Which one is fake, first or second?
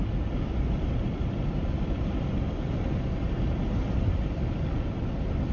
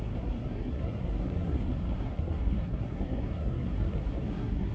second